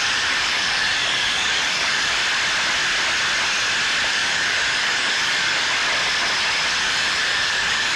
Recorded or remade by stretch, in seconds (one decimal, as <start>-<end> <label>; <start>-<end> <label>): 0.0-2.2 remade; 2.2-4.1 recorded; 4.1-5.8 remade; 5.8-6.8 recorded; 6.8-8.0 remade